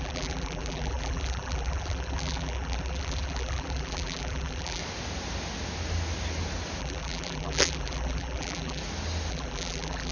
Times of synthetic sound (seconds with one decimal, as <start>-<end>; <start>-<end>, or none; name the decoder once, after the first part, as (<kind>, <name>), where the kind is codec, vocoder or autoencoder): 0.0-4.8 (vocoder, BigVGAN v2); 6.8-8.8; 9.3-10.1